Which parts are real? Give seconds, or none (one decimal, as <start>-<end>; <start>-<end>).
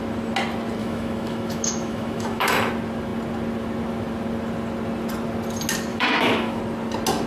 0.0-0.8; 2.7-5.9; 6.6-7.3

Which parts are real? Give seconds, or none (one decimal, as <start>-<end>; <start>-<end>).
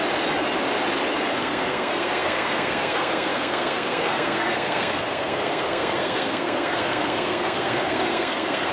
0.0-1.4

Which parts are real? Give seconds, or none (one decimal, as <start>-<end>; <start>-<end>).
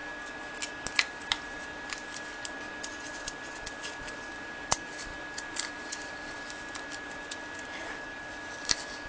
0.0-1.2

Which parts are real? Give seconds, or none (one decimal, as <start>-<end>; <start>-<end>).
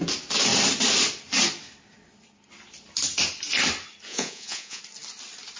0.0-4.1; 4.8-5.6